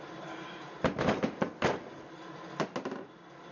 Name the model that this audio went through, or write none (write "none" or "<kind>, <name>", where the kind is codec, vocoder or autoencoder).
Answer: none